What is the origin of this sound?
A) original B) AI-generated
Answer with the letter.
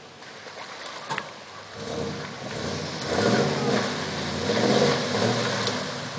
A